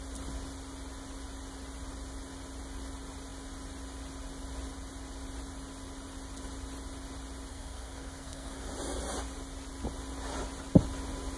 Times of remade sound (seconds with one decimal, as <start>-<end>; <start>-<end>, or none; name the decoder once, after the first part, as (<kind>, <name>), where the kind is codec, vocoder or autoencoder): 7.5-8.7 (codec, SNAC)